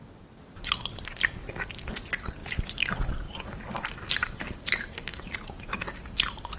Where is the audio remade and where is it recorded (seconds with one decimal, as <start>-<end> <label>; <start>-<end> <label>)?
0.0-4.2 recorded; 4.2-5.2 remade; 5.2-6.6 recorded